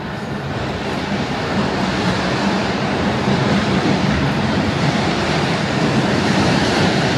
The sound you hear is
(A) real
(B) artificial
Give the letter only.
B